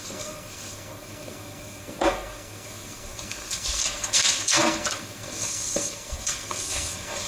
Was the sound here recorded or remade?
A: remade